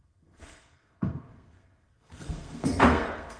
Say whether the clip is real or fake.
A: fake